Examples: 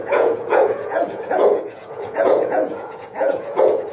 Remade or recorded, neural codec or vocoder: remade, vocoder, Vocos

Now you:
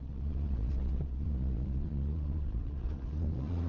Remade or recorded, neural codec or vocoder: remade, vocoder, Vocos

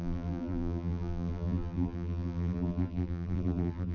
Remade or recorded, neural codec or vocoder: remade, vocoder, BigVGAN v2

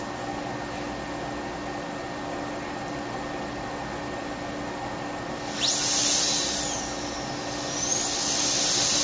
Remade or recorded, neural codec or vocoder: recorded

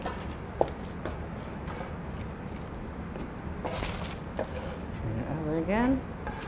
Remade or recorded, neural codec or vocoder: recorded